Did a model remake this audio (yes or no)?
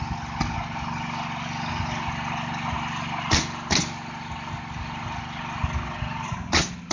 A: no